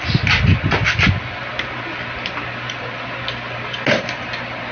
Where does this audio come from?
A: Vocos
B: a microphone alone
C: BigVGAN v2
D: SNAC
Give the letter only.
B